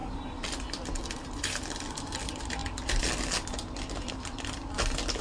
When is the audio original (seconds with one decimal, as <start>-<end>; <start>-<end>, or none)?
0.0-2.6; 3.1-5.2